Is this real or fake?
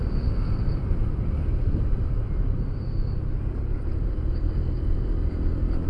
real